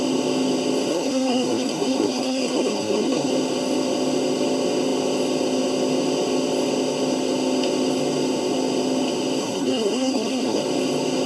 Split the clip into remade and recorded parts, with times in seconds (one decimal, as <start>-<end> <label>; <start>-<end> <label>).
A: 0.0-0.9 recorded; 0.9-3.3 remade; 3.3-9.4 recorded; 9.4-10.6 remade; 10.6-11.3 recorded